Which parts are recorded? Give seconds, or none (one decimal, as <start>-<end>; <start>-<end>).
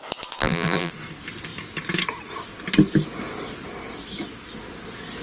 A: 0.0-0.4; 0.9-5.2